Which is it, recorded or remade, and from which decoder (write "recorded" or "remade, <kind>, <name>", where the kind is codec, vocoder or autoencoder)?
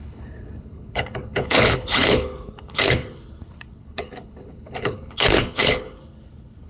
remade, codec, HILCodec